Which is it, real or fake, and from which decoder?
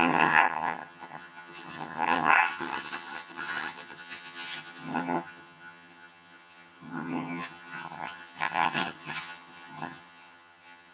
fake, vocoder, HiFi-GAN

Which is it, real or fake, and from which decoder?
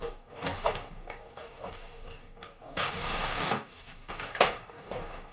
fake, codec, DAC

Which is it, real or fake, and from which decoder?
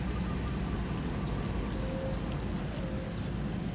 real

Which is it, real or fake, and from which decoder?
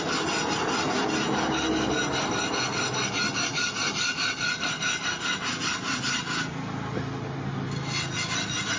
real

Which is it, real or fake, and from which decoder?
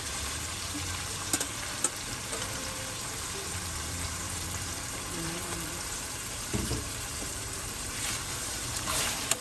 fake, vocoder, BigVGAN v2